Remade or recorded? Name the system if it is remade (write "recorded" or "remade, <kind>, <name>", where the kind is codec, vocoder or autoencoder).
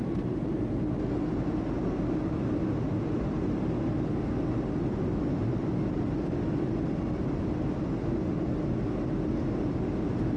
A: recorded